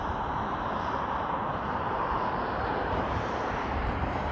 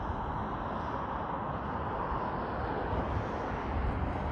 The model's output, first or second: first